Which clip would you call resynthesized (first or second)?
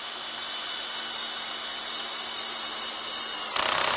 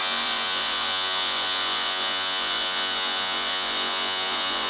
second